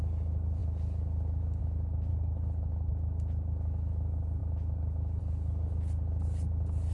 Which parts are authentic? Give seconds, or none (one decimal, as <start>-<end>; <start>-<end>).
0.0-2.1; 2.9-6.9